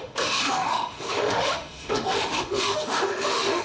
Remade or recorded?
remade